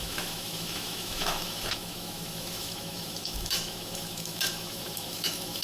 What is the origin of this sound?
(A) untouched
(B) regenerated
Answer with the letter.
B